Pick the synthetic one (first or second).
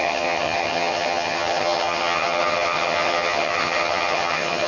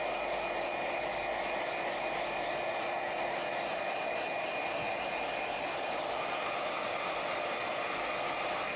first